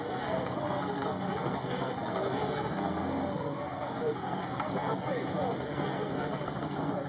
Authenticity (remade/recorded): remade